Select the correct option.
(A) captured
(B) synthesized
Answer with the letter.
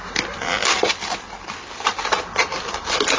A